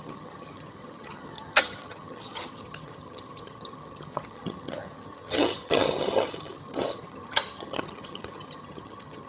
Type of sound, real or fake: fake